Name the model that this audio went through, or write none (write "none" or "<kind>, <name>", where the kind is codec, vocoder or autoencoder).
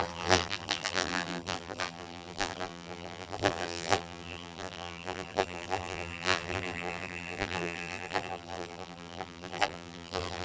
vocoder, BigVGAN v2